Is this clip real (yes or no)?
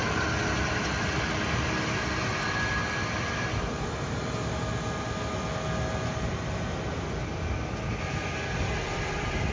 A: yes